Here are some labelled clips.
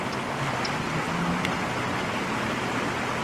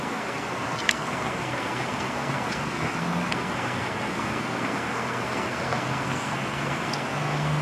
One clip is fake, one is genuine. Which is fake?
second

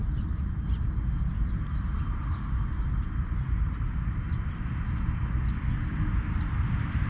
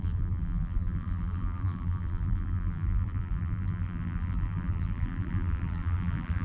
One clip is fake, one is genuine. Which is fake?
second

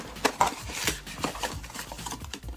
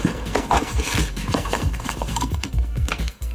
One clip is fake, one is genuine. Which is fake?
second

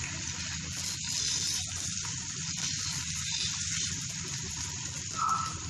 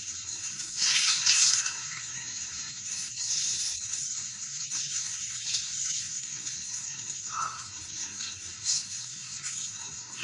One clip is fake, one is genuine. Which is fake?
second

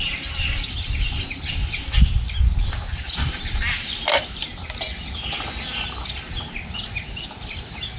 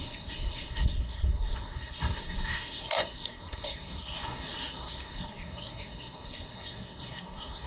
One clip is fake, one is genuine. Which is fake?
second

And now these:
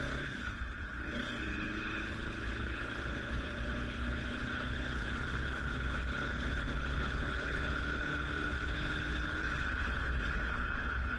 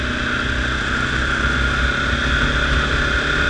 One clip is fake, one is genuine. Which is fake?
first